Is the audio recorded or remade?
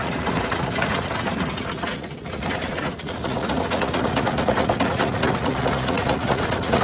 remade